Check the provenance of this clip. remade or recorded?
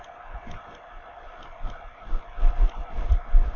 recorded